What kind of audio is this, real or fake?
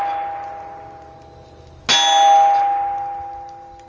real